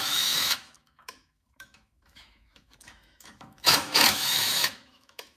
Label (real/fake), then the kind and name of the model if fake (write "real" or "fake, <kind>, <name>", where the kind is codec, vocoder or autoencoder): fake, autoencoder, DAC-VAE